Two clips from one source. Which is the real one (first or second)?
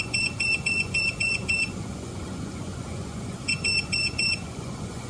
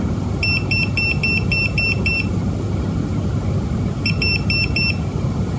second